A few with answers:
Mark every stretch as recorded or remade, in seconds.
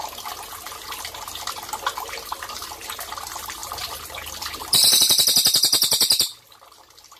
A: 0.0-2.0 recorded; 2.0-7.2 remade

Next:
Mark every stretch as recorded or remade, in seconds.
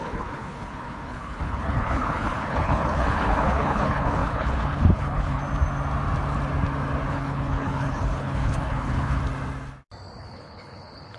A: 0.0-5.4 remade; 5.4-7.1 recorded; 7.1-9.2 remade; 9.2-10.2 recorded; 10.2-11.2 remade